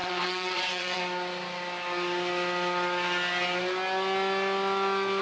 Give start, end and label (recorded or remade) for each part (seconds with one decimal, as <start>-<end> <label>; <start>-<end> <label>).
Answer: 0.0-1.0 remade; 1.0-5.2 recorded